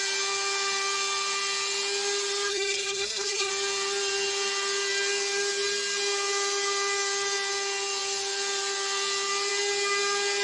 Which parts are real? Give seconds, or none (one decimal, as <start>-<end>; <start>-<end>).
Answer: 0.0-2.5; 3.5-10.4